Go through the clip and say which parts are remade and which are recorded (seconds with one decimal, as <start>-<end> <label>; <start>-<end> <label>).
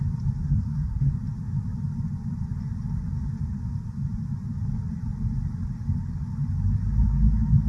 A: 0.0-0.4 recorded; 0.4-1.1 remade; 1.1-7.7 recorded